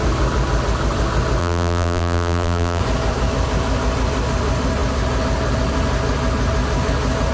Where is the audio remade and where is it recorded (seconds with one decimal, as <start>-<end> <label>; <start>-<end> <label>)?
0.0-1.4 recorded; 1.4-2.8 remade; 2.8-7.3 recorded